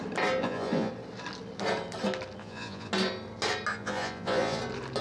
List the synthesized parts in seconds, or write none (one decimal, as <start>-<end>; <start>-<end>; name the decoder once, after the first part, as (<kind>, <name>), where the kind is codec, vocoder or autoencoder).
0.4-0.9 (vocoder, Vocos); 2.4-2.9; 3.7-4.6

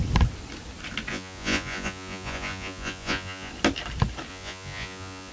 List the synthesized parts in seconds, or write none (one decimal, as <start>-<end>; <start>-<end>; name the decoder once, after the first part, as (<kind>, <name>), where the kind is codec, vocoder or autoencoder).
1.1-3.5 (vocoder, Vocos); 4.3-5.3

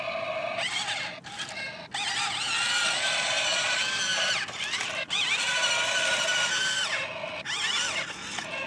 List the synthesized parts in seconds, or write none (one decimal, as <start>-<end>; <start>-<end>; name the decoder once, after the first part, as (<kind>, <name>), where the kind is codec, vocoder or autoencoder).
none

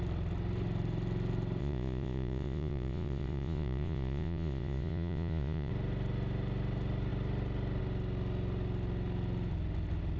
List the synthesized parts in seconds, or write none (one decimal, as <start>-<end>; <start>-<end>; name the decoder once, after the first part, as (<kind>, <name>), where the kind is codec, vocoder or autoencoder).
1.6-5.7 (vocoder, Vocos)

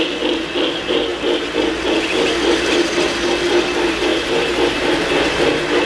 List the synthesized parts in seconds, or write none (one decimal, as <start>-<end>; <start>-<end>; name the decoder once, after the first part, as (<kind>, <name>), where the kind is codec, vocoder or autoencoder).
none

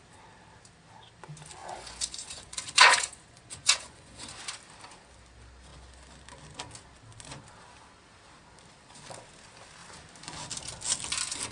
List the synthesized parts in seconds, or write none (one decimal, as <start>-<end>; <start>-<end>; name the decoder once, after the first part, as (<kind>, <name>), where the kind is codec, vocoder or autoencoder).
1.6-4.4 (vocoder, Vocos)